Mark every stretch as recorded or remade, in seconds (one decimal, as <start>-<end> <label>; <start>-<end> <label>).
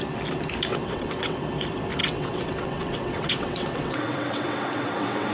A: 0.0-0.7 recorded; 0.7-1.4 remade; 1.4-2.0 recorded; 2.0-5.3 remade